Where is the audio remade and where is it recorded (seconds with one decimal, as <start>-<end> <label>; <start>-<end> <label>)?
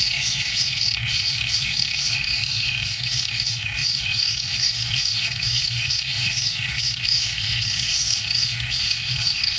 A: 0.0-9.6 remade